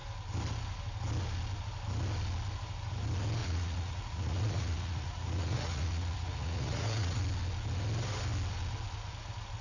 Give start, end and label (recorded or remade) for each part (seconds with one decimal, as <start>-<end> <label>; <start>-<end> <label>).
0.0-3.4 recorded; 3.4-7.2 remade; 7.2-9.6 recorded